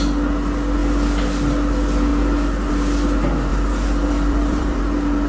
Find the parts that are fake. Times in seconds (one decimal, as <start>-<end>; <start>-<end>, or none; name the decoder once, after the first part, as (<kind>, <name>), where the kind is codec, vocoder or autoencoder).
3.5-4.8 (vocoder, BigVGAN v2)